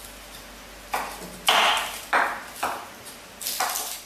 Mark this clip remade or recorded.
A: recorded